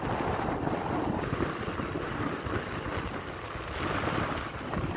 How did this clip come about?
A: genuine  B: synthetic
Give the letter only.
A